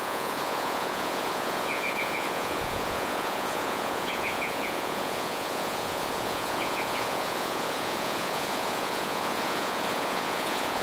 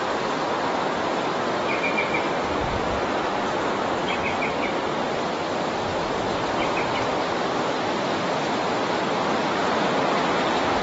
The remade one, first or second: first